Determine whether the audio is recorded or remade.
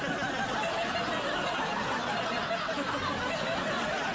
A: recorded